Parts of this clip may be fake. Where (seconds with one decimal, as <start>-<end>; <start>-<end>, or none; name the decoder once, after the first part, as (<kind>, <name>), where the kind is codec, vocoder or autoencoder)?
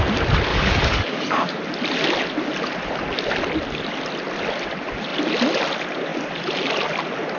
0.5-1.6 (codec, DAC)